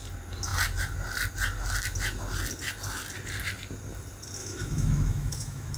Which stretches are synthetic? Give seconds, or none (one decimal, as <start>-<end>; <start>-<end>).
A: 4.4-5.8